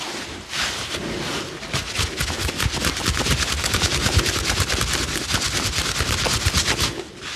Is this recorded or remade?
recorded